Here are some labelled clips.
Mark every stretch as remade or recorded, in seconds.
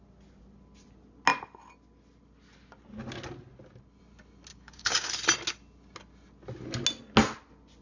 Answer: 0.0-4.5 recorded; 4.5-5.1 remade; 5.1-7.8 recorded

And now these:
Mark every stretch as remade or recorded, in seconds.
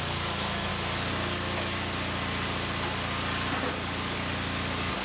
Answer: 0.0-0.7 remade; 0.7-3.7 recorded; 3.7-5.0 remade